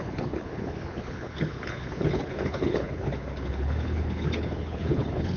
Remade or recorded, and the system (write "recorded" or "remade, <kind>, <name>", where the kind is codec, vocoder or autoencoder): remade, codec, HILCodec